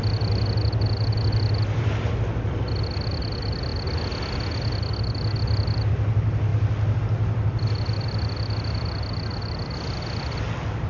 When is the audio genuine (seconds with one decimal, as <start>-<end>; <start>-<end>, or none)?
0.0-10.9